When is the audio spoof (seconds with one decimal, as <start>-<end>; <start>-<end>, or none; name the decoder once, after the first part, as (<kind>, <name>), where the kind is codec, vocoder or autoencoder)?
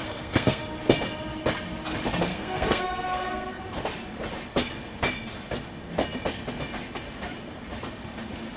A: 0.0-0.6 (codec, SNAC); 2.3-3.6